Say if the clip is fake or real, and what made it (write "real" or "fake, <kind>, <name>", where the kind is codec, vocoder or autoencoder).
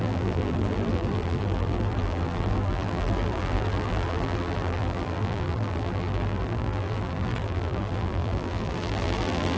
fake, vocoder, BigVGAN v2